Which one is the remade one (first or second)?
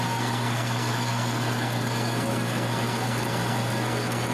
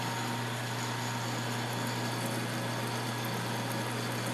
first